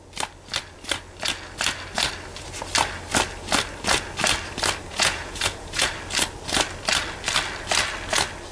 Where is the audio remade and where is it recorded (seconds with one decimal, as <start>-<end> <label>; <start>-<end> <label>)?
0.0-4.9 recorded; 4.9-5.9 remade; 5.9-8.5 recorded